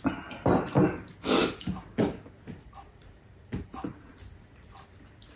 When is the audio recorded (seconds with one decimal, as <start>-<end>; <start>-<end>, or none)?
0.0-1.4; 4.1-5.4